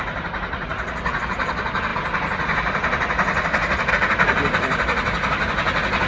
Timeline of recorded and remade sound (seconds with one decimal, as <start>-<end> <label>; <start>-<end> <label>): 0.0-0.5 recorded; 0.5-1.2 remade; 1.2-6.1 recorded